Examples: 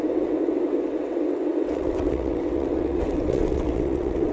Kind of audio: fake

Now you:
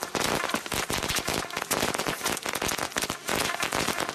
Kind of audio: real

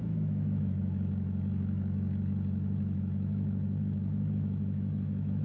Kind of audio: fake